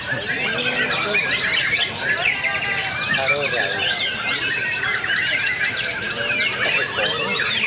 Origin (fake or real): real